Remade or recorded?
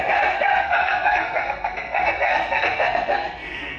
remade